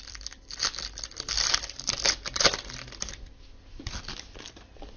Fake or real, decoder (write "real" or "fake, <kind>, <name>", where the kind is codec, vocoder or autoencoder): real